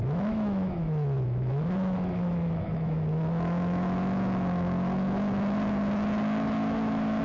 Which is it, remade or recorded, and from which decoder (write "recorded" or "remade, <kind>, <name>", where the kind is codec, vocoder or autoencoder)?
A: remade, autoencoder, DAC-VAE